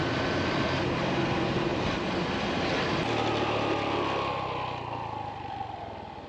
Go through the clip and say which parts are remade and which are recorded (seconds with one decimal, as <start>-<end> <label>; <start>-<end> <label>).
0.0-6.3 recorded